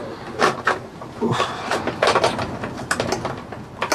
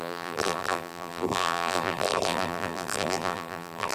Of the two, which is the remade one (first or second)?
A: second